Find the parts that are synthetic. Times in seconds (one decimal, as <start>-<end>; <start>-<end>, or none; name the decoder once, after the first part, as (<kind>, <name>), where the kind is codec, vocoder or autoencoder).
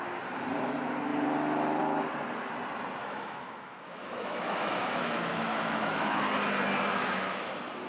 3.0-6.2 (autoencoder, DAC-VAE); 6.9-7.5